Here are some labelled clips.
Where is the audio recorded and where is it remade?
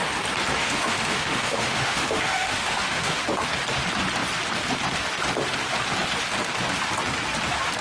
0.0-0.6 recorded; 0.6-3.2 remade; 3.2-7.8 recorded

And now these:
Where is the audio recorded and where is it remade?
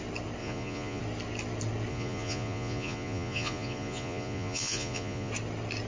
0.0-0.4 recorded; 0.4-1.0 remade; 1.0-1.9 recorded; 1.9-5.3 remade; 5.3-5.9 recorded